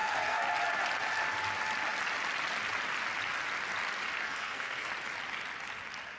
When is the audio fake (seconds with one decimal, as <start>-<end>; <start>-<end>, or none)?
0.0-0.5; 4.2-4.9